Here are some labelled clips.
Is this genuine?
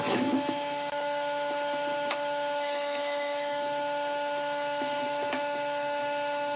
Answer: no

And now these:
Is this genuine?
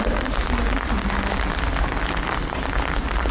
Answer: yes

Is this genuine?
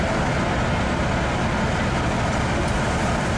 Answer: yes